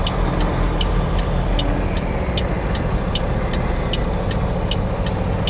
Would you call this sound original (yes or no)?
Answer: yes